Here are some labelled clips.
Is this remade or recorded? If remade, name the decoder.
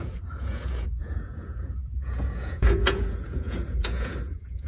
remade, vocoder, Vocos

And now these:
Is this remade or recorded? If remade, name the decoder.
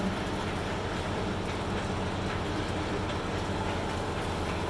recorded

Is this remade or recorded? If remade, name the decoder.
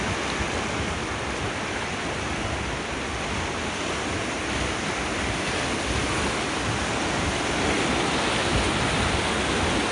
recorded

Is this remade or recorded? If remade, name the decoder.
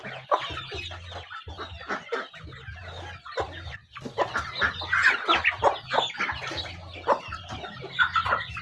recorded